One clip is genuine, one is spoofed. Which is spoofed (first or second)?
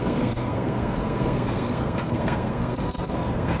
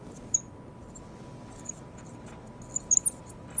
first